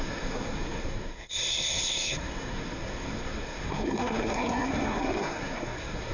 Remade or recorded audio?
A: remade